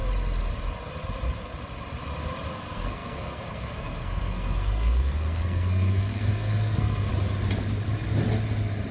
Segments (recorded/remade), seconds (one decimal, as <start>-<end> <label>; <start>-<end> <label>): 0.0-2.5 recorded; 2.5-7.1 remade; 7.1-8.9 recorded